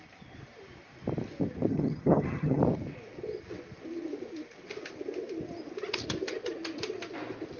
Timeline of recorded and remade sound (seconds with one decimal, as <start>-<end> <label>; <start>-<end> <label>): 0.0-1.7 recorded; 1.7-2.6 remade; 2.6-7.6 recorded